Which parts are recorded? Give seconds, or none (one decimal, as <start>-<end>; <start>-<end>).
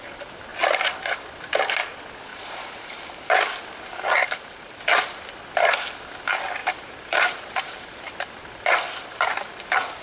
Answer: 0.0-2.3; 3.0-4.2; 4.8-6.6; 8.0-10.0